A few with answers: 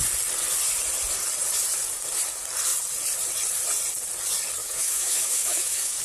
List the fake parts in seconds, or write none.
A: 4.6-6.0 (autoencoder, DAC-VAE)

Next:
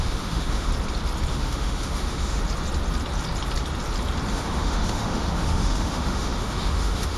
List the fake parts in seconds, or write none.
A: 0.0-0.7 (autoencoder, DAC-VAE); 1.3-2.4; 4.3-7.2